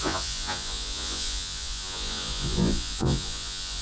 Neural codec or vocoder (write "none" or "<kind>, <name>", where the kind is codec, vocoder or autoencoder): vocoder, Vocos